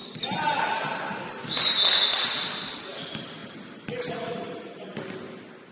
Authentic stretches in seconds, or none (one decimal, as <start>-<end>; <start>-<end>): 0.0-5.7